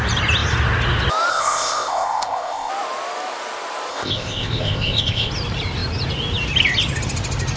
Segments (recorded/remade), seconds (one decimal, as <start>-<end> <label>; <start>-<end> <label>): 0.0-1.3 recorded; 1.3-2.7 remade; 2.7-3.9 recorded; 3.9-5.3 remade; 5.3-7.6 recorded